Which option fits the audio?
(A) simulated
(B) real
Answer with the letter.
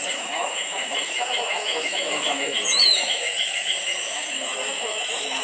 A